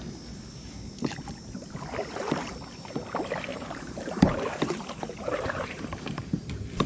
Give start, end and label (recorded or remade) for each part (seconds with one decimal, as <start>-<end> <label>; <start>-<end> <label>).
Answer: 0.0-3.5 recorded; 3.5-6.5 remade; 6.5-6.9 recorded